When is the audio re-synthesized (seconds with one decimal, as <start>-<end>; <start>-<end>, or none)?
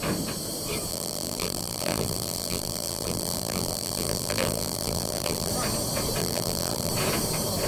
0.9-5.5; 6.2-6.9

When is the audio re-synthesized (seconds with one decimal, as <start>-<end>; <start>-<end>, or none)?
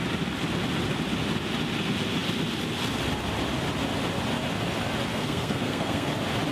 5.1-6.1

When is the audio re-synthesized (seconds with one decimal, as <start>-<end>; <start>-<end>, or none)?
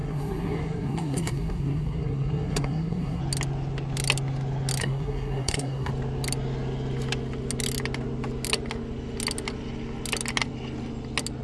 0.0-3.2; 4.8-5.9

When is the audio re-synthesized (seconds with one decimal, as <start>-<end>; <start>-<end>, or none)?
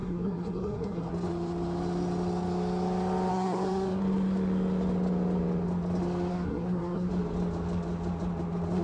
0.0-1.1; 3.3-4.0; 6.3-7.1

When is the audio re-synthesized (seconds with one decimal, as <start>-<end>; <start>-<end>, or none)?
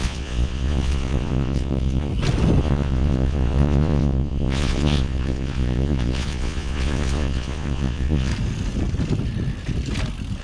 0.0-2.1; 2.6-8.3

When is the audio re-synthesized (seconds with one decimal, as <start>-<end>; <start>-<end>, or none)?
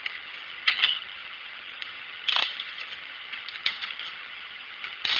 0.0-5.2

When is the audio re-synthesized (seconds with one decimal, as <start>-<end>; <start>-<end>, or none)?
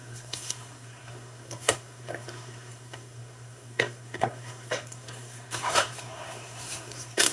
0.0-7.3